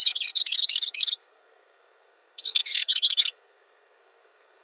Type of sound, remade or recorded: remade